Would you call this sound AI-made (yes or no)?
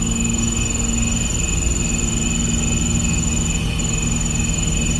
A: no